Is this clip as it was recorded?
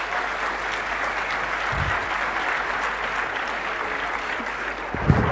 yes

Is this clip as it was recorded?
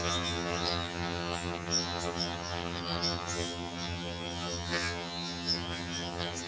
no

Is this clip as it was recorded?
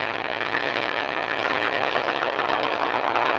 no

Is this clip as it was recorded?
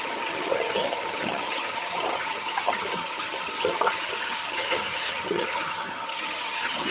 no